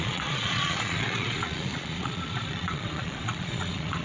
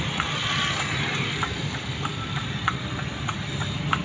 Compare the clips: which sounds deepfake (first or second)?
first